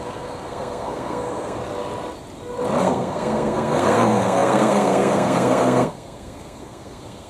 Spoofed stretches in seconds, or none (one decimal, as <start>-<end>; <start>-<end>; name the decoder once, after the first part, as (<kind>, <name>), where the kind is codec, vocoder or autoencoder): 0.0-1.6 (codec, SNAC); 2.8-7.3

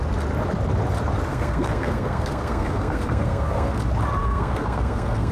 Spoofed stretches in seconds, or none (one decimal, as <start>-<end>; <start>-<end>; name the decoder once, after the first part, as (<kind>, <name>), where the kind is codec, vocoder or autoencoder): 1.3-3.8 (codec, SNAC); 4.2-5.3

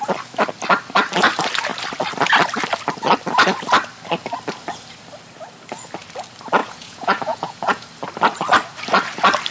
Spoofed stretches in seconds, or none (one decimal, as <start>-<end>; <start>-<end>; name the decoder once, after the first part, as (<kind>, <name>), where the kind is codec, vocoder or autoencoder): 6.6-7.9 (vocoder, Vocos)